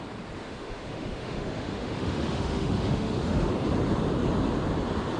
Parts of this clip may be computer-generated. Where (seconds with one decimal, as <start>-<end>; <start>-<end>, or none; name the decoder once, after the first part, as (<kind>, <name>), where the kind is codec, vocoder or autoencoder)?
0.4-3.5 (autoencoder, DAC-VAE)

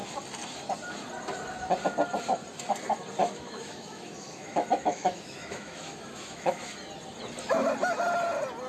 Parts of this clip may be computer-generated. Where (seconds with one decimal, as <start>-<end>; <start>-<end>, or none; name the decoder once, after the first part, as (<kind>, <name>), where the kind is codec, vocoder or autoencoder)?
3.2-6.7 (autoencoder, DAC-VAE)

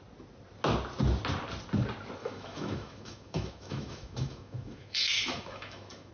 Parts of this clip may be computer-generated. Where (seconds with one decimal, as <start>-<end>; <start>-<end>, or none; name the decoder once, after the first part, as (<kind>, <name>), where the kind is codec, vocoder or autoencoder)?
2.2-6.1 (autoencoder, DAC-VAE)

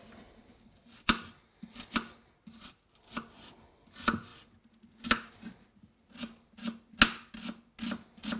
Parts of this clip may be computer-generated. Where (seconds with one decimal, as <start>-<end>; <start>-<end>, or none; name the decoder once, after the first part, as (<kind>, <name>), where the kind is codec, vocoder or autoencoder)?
none

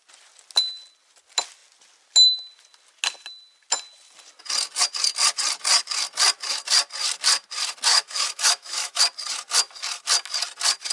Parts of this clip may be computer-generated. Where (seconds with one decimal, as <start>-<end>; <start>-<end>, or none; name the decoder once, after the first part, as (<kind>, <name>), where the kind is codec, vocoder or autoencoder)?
7.9-9.0 (autoencoder, DAC-VAE)

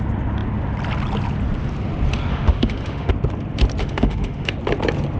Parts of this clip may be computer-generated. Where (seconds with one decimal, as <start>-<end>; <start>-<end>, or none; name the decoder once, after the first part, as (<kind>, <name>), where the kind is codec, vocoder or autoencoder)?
2.3-3.1 (autoencoder, DAC-VAE); 3.8-4.5

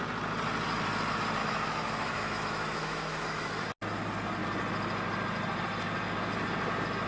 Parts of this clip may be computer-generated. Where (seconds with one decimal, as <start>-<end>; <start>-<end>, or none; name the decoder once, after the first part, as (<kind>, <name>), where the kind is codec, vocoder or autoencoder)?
1.4-3.7 (autoencoder, DAC-VAE)

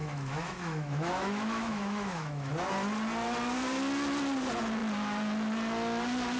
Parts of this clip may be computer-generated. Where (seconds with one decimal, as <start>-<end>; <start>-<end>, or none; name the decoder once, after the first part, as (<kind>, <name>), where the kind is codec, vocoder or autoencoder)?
0.0-2.5 (autoencoder, DAC-VAE)